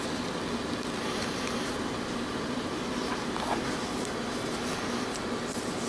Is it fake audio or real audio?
real